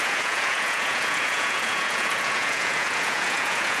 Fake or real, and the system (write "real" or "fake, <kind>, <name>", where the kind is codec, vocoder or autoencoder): fake, vocoder, Vocos